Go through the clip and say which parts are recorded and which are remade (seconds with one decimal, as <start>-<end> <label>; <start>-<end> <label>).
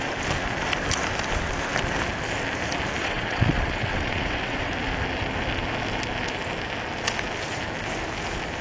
0.0-3.0 recorded; 3.0-4.7 remade; 4.7-8.6 recorded